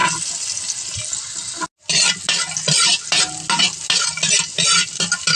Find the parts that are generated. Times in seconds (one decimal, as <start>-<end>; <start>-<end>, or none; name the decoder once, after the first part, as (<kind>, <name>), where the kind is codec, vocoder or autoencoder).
none